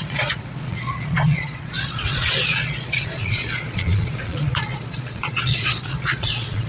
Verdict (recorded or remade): remade